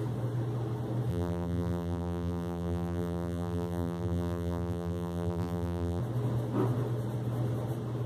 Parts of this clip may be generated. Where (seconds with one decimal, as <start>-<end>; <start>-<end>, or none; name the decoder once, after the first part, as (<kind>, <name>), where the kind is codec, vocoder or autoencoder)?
1.1-6.0 (vocoder, BigVGAN v2)